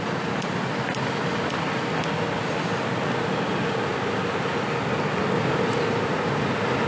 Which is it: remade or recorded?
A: recorded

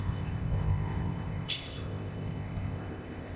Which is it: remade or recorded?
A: remade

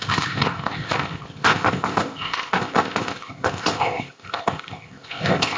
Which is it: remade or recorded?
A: remade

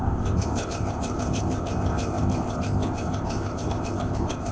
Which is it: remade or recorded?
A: remade